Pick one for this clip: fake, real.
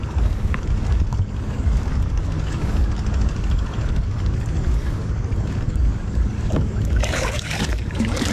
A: fake